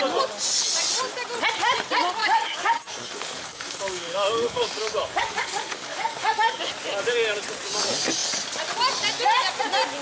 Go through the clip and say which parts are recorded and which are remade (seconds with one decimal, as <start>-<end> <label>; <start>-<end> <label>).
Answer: 0.0-2.2 recorded; 2.2-6.7 remade; 6.7-10.0 recorded